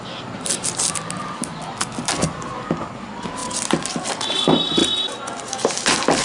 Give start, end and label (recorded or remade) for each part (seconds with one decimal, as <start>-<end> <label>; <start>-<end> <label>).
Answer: 0.0-6.2 recorded